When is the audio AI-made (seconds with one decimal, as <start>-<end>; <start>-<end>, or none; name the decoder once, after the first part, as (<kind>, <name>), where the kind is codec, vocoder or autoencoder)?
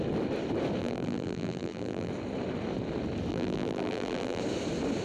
0.8-2.1 (vocoder, BigVGAN v2); 3.3-4.4